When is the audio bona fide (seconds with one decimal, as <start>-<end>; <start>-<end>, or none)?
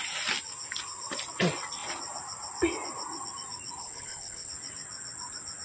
0.0-3.8; 4.5-5.6